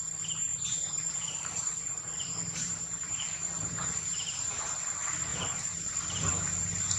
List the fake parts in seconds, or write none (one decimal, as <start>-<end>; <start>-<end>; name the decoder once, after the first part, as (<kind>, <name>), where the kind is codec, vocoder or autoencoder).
0.5-4.7 (vocoder, BigVGAN v2); 5.3-6.3